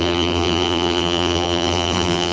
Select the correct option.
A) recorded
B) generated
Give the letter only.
B